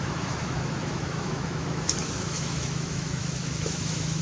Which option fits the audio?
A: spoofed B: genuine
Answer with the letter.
A